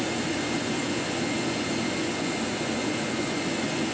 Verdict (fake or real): fake